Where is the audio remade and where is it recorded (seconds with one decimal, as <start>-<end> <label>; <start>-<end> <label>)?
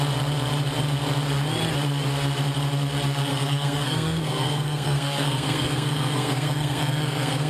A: 0.0-3.3 recorded; 3.3-7.5 remade